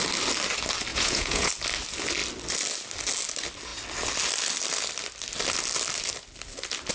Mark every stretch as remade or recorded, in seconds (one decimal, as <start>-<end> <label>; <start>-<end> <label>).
0.0-0.9 recorded; 0.9-1.5 remade; 1.5-6.9 recorded